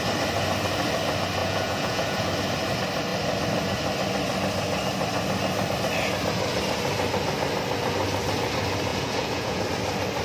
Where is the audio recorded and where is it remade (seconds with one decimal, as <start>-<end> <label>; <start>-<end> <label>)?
0.0-1.4 recorded; 1.4-2.3 remade; 2.3-8.9 recorded; 8.9-9.6 remade; 9.6-10.2 recorded